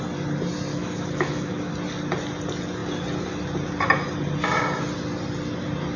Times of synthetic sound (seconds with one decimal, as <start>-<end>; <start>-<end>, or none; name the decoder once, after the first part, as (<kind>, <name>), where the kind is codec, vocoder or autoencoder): 0.7-1.7 (autoencoder, DAC-VAE)